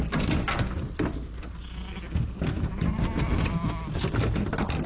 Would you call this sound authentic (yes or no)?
yes